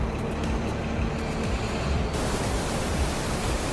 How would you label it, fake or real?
real